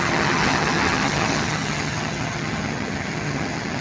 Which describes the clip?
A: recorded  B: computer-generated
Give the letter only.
B